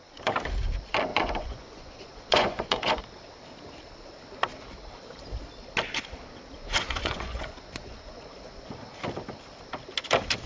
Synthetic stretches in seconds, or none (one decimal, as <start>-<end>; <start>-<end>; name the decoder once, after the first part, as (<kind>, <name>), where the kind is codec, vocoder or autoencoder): 1.1-3.0 (vocoder, Vocos); 6.6-8.3